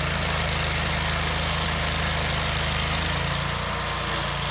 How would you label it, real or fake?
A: real